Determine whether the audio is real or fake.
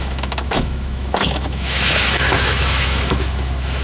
fake